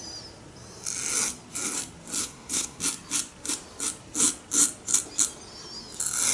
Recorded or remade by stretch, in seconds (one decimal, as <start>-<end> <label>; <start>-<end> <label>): 0.0-2.2 recorded; 2.2-2.8 remade; 2.8-6.3 recorded